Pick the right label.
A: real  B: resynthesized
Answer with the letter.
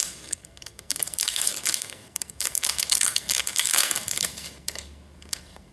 B